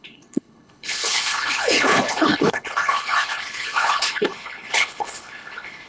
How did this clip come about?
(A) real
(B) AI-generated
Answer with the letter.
B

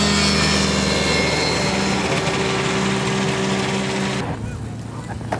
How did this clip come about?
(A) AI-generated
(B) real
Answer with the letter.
B